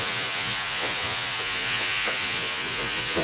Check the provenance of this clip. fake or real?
fake